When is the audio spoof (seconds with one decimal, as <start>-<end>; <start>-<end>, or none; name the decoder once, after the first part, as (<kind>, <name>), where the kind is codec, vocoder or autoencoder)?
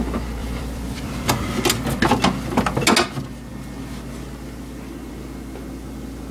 0.4-1.3 (vocoder, BigVGAN v2)